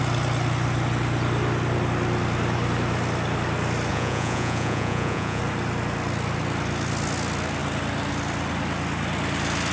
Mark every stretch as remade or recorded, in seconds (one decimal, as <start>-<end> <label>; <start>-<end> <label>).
0.0-3.9 recorded; 3.9-5.4 remade; 5.4-9.7 recorded